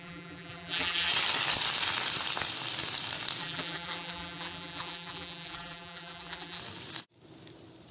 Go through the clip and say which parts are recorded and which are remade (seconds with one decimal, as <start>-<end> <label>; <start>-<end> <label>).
0.0-1.1 remade; 1.1-3.4 recorded; 3.4-6.6 remade; 6.6-7.9 recorded

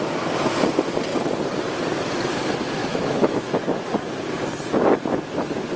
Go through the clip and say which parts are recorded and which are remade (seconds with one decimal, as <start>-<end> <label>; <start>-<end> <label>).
0.0-2.8 recorded; 2.8-3.5 remade; 3.5-5.8 recorded

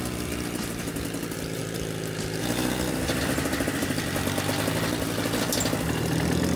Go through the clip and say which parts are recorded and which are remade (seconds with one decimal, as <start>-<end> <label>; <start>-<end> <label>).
0.0-6.6 recorded

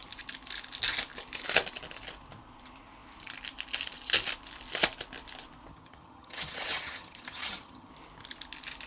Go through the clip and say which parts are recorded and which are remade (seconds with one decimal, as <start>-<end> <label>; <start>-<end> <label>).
0.0-5.7 recorded; 5.7-7.9 remade; 7.9-8.9 recorded

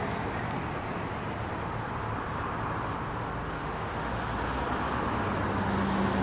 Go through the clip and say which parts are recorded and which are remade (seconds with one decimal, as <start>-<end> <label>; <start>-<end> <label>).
0.0-3.6 recorded; 3.6-4.1 remade; 4.1-6.2 recorded

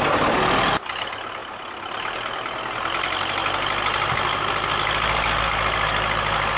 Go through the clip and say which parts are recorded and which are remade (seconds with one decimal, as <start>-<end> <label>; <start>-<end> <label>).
0.0-6.6 recorded

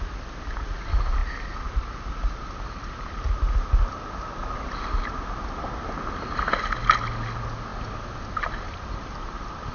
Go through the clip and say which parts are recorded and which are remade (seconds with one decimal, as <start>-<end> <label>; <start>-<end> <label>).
0.0-1.2 recorded; 1.2-2.4 remade; 2.4-7.7 recorded; 7.7-9.7 remade